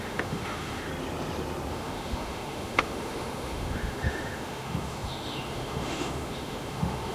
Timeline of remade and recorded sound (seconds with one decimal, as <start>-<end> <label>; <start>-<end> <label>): 0.0-0.9 remade; 0.9-1.7 recorded; 1.7-7.1 remade